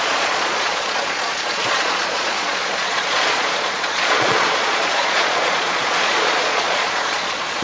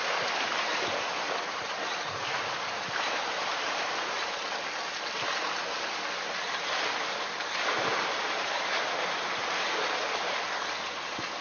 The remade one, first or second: first